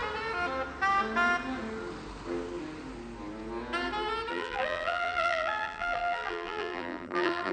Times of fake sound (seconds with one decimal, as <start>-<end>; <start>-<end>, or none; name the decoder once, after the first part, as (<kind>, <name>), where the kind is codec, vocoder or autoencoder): 4.3-7.5 (vocoder, BigVGAN v2)